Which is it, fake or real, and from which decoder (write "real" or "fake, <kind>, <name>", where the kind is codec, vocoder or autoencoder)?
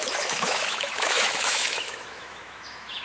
fake, autoencoder, DAC-VAE